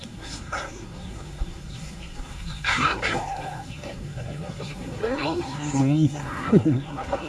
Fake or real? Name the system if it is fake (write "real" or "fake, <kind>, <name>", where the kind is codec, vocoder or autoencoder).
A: fake, codec, SNAC